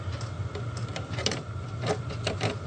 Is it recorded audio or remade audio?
recorded